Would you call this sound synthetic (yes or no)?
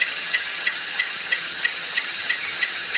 yes